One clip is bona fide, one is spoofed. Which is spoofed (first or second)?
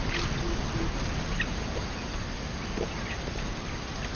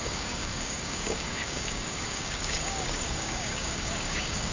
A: second